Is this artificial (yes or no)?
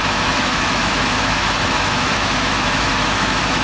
yes